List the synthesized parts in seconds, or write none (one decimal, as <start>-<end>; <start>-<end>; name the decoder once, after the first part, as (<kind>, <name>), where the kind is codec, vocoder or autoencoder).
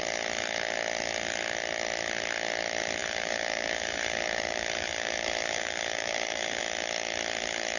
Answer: 3.0-6.6 (vocoder, BigVGAN v2)